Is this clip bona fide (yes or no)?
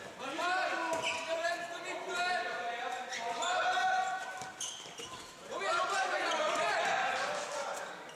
yes